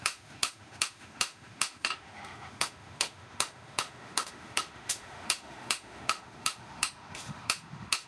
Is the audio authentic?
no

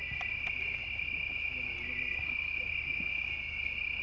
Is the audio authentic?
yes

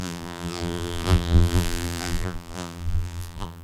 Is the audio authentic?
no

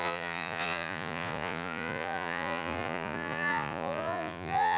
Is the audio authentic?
no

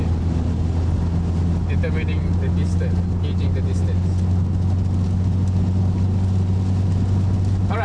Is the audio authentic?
yes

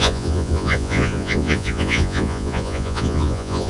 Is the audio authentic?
no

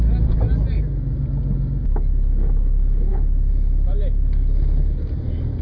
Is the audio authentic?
yes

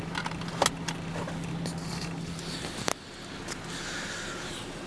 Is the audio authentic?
yes